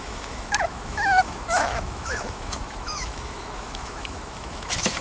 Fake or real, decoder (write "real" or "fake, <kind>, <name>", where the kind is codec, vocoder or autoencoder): fake, autoencoder, DAC-VAE